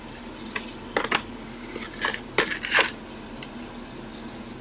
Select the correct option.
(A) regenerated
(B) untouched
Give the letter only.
B